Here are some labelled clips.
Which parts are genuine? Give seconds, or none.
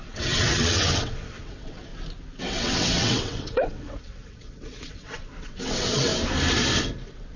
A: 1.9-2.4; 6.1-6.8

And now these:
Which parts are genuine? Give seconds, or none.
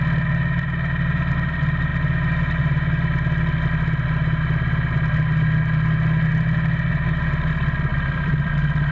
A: 0.0-7.9; 8.5-8.9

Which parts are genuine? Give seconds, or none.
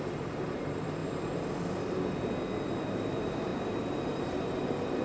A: 1.0-2.9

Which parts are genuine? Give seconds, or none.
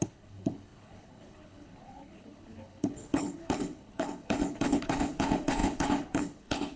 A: none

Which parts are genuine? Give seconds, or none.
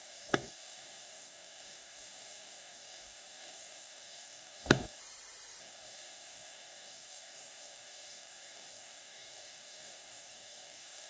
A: 5.0-5.6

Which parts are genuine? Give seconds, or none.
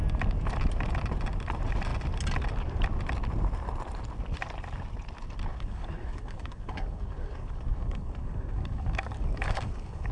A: 0.0-5.5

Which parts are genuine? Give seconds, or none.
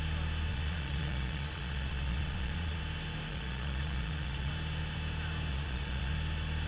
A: 0.0-0.5; 2.8-3.3; 4.5-5.5; 6.1-6.7